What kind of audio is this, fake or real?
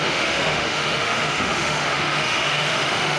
fake